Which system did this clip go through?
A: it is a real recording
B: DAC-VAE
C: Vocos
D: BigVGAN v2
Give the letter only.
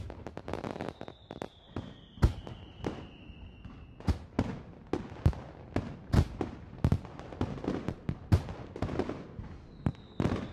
A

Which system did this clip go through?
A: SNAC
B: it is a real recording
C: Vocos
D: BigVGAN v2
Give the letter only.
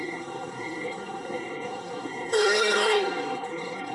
A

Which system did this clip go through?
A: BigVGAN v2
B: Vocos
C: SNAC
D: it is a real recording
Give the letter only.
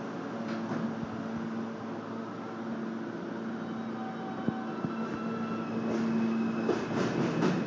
D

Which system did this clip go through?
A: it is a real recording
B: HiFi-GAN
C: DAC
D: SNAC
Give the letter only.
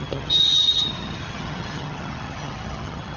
B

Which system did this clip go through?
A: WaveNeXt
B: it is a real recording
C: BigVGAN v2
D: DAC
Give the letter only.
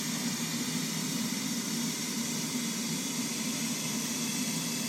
B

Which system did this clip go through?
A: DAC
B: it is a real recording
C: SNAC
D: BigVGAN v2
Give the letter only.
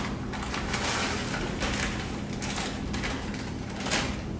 B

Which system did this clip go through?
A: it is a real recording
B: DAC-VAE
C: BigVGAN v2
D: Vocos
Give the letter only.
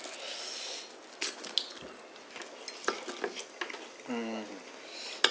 A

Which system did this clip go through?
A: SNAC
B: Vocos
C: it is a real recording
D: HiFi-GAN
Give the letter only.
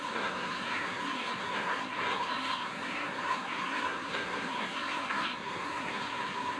A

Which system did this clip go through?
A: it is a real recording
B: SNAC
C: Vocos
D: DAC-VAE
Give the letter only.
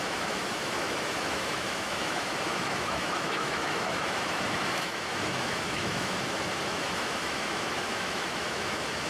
D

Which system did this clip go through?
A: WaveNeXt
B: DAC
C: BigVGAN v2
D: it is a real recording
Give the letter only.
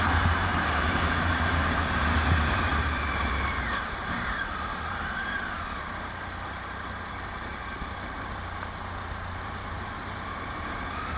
C